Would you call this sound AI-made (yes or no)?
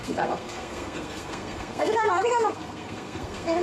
yes